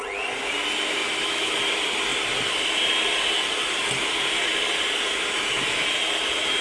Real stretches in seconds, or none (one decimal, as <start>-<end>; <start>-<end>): 0.0-1.0; 1.6-6.6